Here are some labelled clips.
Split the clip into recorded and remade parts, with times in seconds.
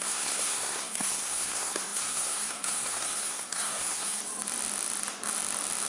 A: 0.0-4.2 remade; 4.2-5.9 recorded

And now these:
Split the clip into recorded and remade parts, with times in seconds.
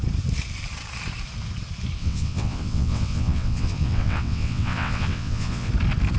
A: 0.0-2.0 recorded; 2.0-5.7 remade; 5.7-6.2 recorded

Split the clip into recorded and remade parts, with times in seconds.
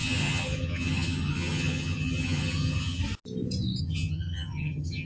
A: 0.0-3.0 remade; 3.0-3.8 recorded; 3.8-5.1 remade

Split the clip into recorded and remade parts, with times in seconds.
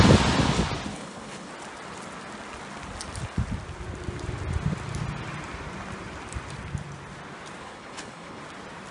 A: 0.0-0.9 recorded; 0.9-1.5 remade; 1.5-7.6 recorded; 7.6-8.4 remade; 8.4-8.9 recorded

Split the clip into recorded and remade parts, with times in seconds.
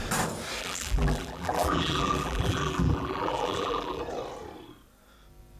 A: 0.0-0.6 recorded; 0.6-4.0 remade; 4.0-5.6 recorded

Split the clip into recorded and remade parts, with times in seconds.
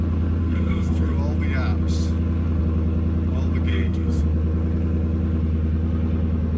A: 0.0-0.4 recorded; 0.4-1.1 remade; 1.1-3.7 recorded; 3.7-4.2 remade; 4.2-6.6 recorded